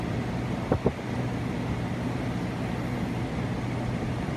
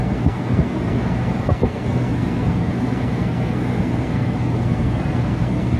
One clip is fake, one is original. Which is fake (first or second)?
second